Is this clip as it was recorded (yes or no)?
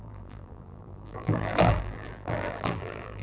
no